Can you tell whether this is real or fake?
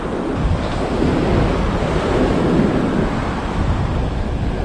real